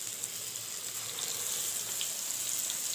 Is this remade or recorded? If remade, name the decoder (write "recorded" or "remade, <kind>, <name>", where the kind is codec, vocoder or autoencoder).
recorded